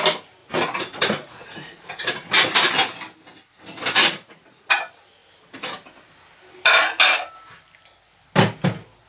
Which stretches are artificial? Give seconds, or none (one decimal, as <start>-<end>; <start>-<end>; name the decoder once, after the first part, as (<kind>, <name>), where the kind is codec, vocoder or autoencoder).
0.4-2.3 (vocoder, Vocos); 4.0-4.7